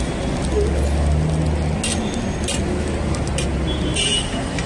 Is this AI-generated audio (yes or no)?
no